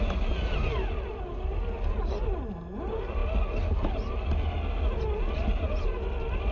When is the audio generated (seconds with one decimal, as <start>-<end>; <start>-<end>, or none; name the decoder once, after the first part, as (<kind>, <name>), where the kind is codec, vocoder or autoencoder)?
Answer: none